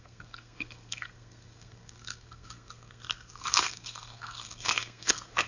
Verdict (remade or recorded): remade